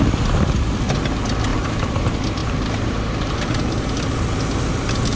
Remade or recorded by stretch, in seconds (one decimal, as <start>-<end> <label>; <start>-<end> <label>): 0.0-1.5 recorded; 1.5-2.0 remade; 2.0-2.4 recorded; 2.4-4.0 remade; 4.0-5.2 recorded